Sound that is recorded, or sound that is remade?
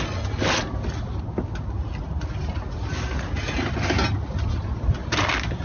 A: recorded